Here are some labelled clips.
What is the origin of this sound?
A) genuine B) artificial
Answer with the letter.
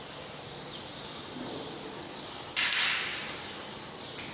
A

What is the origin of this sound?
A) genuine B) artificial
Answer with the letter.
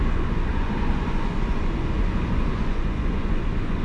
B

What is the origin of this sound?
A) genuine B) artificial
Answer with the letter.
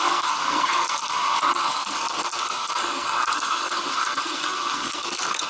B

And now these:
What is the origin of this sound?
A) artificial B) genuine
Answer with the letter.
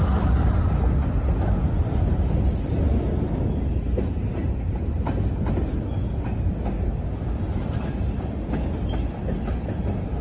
B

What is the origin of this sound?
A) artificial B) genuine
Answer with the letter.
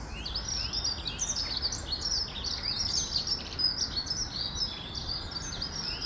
B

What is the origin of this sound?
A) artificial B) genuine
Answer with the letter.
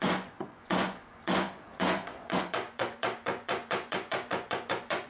A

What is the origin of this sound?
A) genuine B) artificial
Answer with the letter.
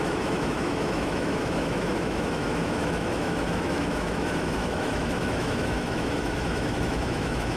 B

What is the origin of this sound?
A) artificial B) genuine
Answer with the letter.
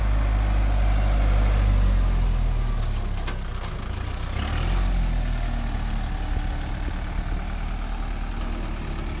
B